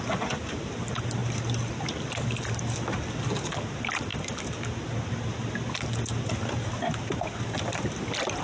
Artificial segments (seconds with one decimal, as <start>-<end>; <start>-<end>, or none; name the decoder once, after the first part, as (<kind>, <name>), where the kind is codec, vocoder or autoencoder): none